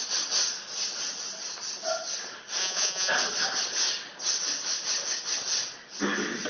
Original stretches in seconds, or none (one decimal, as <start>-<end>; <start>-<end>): 0.0-2.6; 3.1-6.5